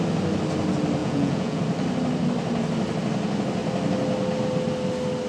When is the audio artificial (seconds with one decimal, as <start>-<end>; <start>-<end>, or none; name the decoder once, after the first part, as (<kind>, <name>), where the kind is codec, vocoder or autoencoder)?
1.0-1.6 (vocoder, Vocos)